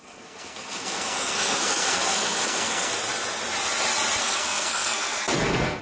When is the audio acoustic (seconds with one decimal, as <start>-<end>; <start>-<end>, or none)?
2.9-4.2